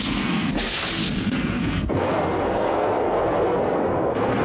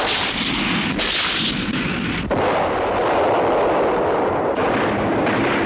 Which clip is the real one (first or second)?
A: second